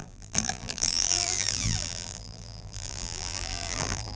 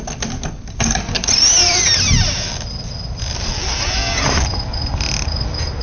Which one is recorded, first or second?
second